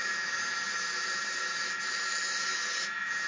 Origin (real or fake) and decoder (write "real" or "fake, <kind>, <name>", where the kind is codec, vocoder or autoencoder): fake, autoencoder, DAC-VAE